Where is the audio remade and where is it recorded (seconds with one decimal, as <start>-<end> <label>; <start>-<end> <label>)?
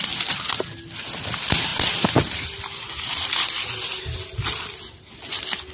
0.0-5.7 recorded